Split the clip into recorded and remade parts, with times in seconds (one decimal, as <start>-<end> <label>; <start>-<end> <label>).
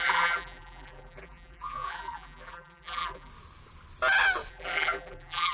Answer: 0.0-3.3 remade; 3.3-4.5 recorded; 4.5-5.5 remade